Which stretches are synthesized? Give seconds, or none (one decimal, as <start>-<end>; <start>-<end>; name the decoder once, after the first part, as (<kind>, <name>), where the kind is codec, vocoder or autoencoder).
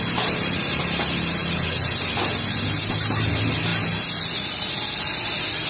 0.0-1.4 (vocoder, BigVGAN v2); 2.6-3.7